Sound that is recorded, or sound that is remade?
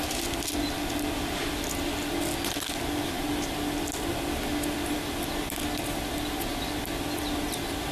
recorded